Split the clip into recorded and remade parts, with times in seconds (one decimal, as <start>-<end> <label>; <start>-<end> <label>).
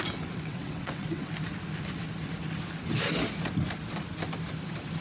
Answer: 0.0-0.5 recorded; 0.5-1.3 remade; 1.3-5.0 recorded